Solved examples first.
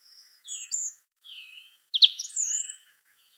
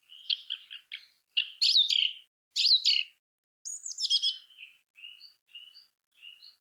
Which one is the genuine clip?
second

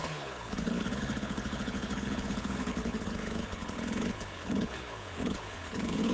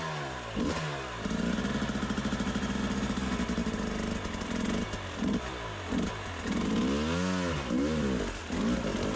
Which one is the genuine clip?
second